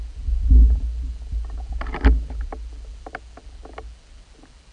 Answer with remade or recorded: recorded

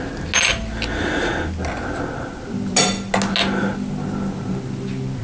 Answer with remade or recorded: recorded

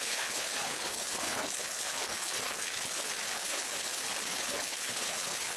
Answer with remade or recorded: remade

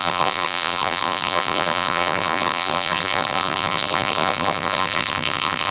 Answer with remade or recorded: remade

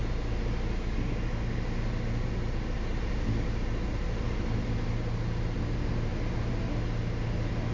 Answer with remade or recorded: recorded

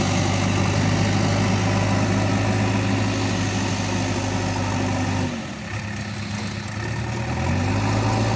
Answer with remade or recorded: recorded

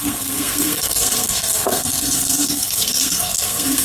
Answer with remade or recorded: remade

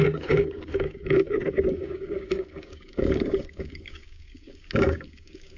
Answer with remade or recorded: remade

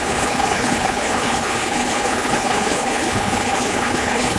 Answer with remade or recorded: remade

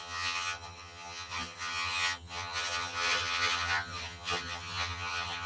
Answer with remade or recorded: remade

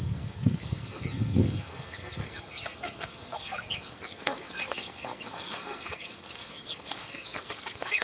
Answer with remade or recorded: remade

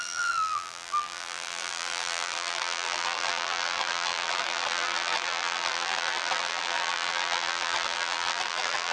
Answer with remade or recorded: remade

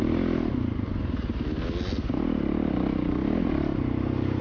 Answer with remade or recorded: recorded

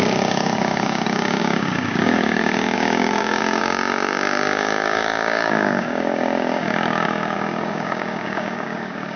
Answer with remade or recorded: remade